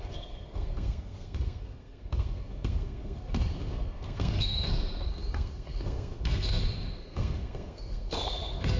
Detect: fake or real fake